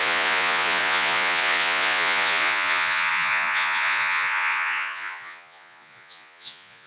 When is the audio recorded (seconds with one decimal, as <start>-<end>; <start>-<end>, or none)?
none